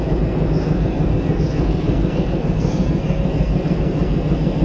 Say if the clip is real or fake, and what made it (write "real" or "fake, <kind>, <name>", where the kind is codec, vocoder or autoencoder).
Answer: fake, codec, SNAC